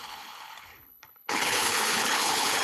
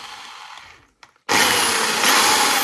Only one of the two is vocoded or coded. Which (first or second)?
first